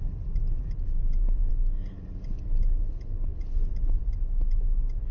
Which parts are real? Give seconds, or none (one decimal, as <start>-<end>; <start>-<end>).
0.0-1.0; 1.5-5.1